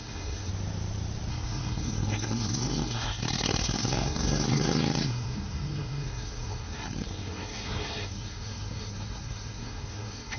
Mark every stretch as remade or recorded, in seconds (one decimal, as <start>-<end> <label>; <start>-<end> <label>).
0.0-0.5 remade; 0.5-1.3 recorded; 1.3-10.4 remade